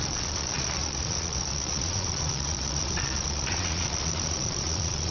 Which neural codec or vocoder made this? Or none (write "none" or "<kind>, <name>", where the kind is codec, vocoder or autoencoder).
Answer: vocoder, Vocos